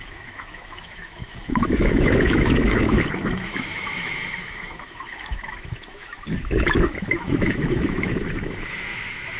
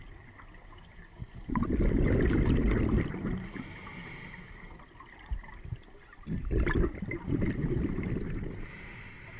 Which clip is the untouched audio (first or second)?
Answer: second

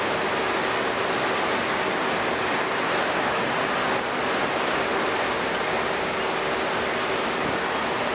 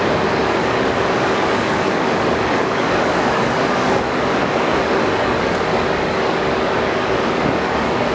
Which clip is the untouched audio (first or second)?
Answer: first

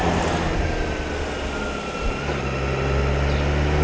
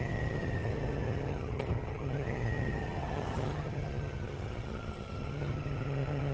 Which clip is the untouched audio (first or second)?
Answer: first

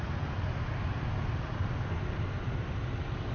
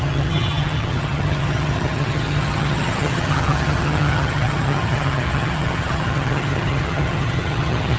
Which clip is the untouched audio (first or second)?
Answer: first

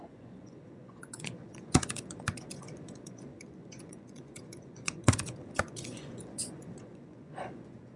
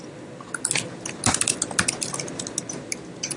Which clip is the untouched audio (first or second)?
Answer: second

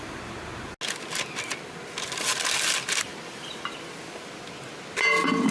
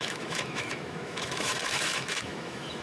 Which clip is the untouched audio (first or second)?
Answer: first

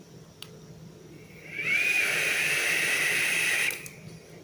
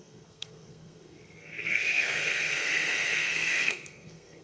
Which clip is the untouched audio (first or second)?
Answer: first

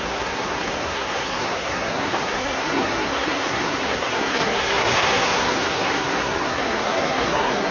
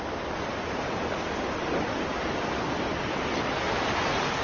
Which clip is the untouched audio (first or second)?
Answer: second